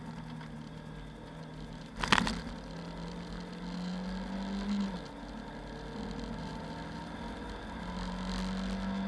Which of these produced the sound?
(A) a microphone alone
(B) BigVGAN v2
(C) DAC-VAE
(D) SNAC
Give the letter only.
A